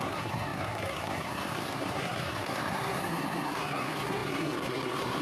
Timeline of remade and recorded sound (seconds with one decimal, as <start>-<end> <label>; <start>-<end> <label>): 0.0-5.2 remade